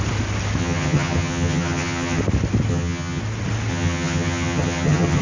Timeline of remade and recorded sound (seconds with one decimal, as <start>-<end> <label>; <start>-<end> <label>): 0.0-0.6 recorded; 0.6-2.2 remade; 2.2-2.7 recorded; 2.7-3.2 remade; 3.2-3.7 recorded; 3.7-5.2 remade